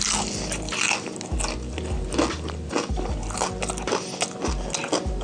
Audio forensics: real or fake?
real